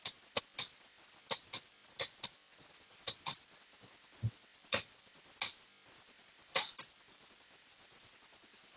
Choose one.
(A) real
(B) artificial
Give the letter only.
A